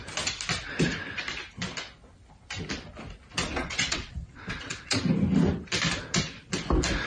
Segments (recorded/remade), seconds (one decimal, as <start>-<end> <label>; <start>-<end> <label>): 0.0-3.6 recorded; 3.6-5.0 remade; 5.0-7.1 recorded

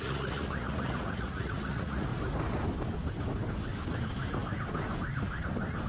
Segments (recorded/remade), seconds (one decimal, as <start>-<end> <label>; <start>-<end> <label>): 0.0-2.1 remade; 2.1-5.9 recorded

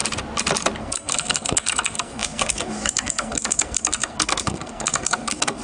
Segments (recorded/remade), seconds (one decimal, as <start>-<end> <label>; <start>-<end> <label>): 0.0-0.8 recorded; 0.8-5.6 remade

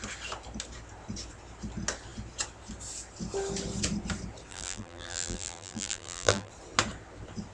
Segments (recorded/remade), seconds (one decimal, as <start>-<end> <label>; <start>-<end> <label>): 0.0-4.5 recorded; 4.5-6.5 remade; 6.5-7.5 recorded